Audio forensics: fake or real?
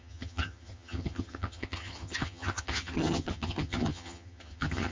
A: fake